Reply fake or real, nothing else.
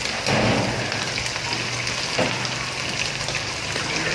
real